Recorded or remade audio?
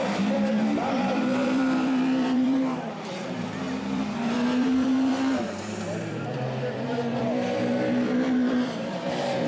remade